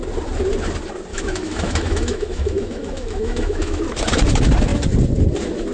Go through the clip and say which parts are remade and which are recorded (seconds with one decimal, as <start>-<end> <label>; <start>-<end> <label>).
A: 0.0-1.1 recorded; 1.1-3.8 remade; 3.8-5.7 recorded